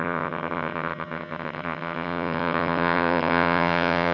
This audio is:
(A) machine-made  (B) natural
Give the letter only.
A